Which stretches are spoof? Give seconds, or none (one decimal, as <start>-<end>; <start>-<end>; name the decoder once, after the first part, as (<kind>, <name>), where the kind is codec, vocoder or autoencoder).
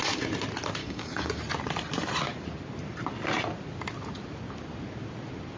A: 0.8-1.3 (codec, DAC)